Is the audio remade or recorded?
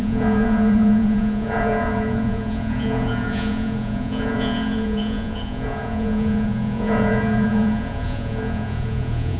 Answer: remade